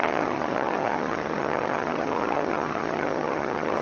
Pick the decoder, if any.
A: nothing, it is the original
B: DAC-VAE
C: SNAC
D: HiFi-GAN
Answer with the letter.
D